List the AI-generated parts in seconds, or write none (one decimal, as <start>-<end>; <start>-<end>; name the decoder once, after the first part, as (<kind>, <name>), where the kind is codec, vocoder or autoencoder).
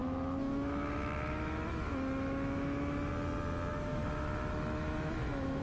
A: 0.0-3.1 (autoencoder, DAC-VAE); 3.7-5.6